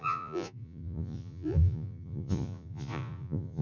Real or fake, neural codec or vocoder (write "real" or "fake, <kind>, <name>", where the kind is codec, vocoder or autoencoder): fake, vocoder, Vocos